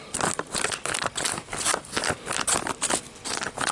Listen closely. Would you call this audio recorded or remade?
recorded